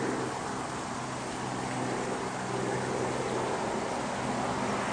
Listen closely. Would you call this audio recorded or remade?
recorded